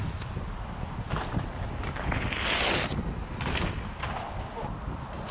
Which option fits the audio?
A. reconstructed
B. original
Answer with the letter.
B